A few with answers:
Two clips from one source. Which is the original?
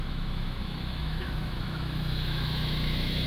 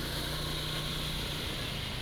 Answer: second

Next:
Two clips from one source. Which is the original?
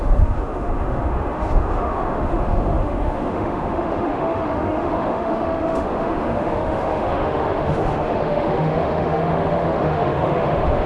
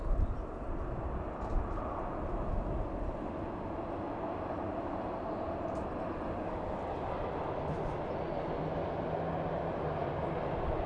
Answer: second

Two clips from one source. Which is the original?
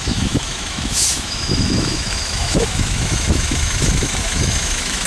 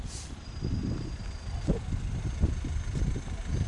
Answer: second